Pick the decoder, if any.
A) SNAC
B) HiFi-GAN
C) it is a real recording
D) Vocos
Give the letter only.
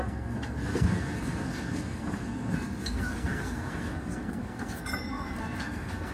A